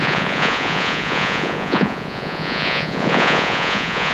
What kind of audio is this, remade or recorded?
remade